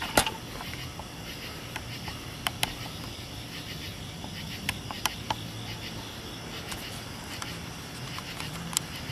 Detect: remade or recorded recorded